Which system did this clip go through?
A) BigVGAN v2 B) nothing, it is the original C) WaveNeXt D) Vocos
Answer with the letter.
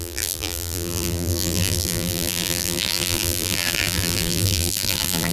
A